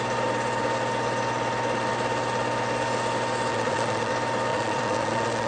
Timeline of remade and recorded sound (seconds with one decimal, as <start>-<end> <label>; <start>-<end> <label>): 0.0-3.5 recorded; 3.5-4.1 remade; 4.1-4.5 recorded; 4.5-5.5 remade